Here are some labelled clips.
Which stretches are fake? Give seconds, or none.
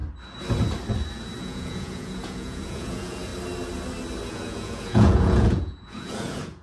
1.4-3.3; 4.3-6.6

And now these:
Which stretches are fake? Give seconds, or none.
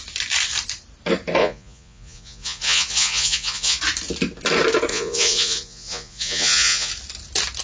1.4-3.8; 4.9-6.9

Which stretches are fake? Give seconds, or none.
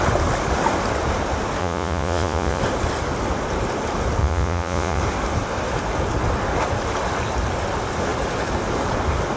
1.6-2.6; 4.2-5.0